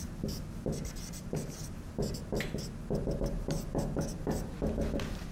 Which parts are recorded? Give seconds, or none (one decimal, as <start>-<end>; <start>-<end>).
0.0-5.3